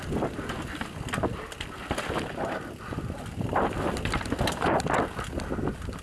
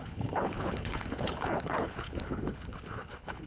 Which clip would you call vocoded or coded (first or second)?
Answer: second